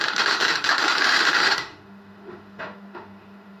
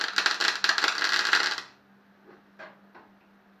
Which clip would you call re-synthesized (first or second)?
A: first